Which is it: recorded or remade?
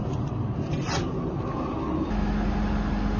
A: recorded